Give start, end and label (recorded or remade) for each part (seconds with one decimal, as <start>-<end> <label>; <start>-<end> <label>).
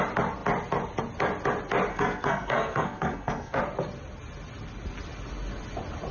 0.0-1.9 recorded; 1.9-3.6 remade; 3.6-6.1 recorded